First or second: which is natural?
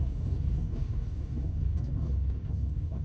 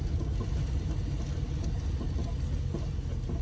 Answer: second